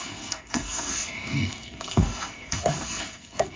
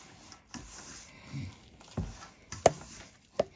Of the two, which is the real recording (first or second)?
second